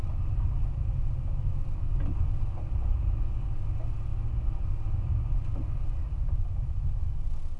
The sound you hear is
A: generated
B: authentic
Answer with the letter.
B